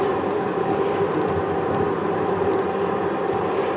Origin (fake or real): real